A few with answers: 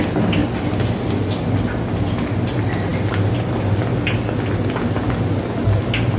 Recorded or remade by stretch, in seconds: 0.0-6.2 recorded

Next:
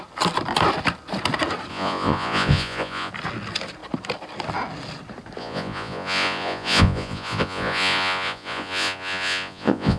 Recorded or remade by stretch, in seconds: 0.0-1.7 recorded; 1.7-3.1 remade; 3.1-5.4 recorded; 5.4-10.0 remade